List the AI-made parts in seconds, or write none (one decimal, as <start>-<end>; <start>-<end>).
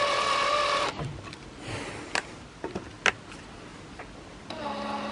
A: none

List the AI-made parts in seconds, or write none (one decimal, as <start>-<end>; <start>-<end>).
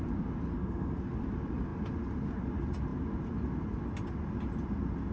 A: 0.5-1.0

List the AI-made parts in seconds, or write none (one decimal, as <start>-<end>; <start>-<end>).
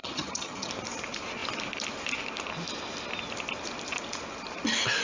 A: 0.0-0.7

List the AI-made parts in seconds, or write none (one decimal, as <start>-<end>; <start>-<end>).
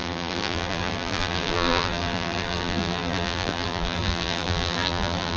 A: 0.0-5.4